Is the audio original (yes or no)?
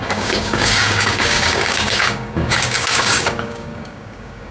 no